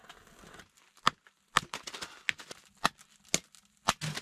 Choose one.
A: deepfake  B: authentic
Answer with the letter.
B